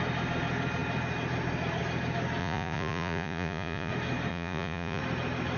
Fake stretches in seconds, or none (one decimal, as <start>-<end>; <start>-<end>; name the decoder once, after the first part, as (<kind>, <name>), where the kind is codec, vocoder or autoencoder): 2.4-3.9 (vocoder, Vocos); 4.3-5.0